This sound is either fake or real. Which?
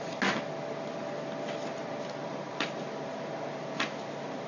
real